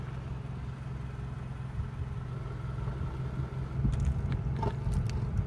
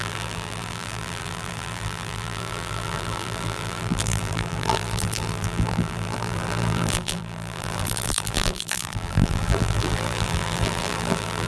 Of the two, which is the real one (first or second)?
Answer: first